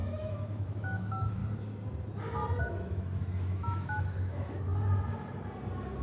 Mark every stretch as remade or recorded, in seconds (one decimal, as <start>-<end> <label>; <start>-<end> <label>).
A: 0.0-1.4 remade; 1.4-2.6 recorded; 2.6-4.7 remade; 4.7-6.0 recorded